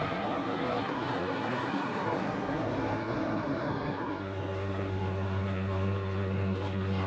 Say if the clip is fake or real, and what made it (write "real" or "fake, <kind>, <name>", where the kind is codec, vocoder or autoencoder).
fake, codec, SNAC